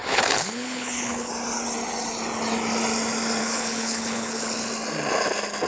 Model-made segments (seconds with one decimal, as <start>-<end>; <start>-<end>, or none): 0.0-1.3; 3.4-4.7